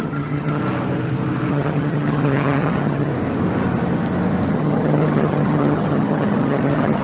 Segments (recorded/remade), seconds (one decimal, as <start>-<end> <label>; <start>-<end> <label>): 0.0-0.6 remade; 0.6-1.5 recorded; 1.5-3.1 remade; 3.1-4.5 recorded; 4.5-7.0 remade